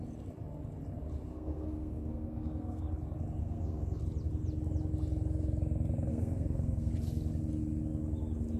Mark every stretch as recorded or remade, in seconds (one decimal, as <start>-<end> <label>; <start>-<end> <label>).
0.0-1.3 recorded; 1.3-2.8 remade; 2.8-3.4 recorded; 3.4-4.0 remade; 4.0-6.1 recorded; 6.1-6.9 remade; 6.9-8.6 recorded